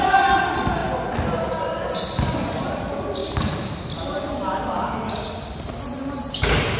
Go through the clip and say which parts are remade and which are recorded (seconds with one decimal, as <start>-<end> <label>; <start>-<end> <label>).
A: 0.0-3.2 recorded; 3.2-5.0 remade; 5.0-6.8 recorded